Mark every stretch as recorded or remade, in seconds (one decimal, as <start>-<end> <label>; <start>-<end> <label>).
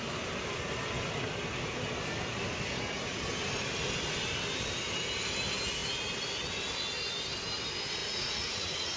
0.0-8.0 recorded; 8.0-9.0 remade